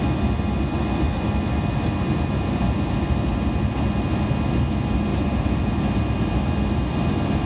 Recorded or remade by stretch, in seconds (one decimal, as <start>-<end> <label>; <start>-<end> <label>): 0.0-5.1 recorded; 5.1-5.8 remade; 5.8-7.5 recorded

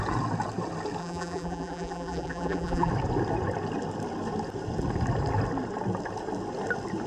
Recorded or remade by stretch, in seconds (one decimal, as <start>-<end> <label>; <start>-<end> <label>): 0.0-1.0 recorded; 1.0-2.9 remade; 2.9-7.1 recorded